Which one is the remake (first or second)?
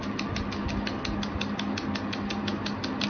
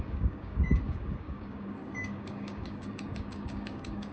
second